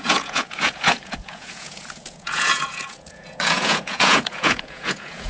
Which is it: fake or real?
fake